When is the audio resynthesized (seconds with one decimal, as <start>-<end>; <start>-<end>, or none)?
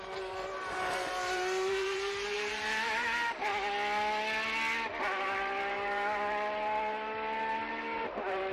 0.0-3.5; 5.0-8.5